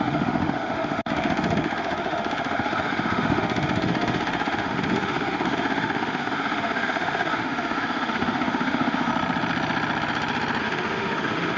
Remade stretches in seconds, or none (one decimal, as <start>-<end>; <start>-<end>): 0.0-9.1; 10.6-11.6